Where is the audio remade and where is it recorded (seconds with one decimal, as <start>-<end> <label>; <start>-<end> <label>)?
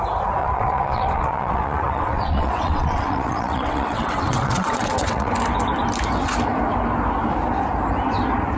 0.0-0.4 recorded; 0.4-5.3 remade; 5.3-8.6 recorded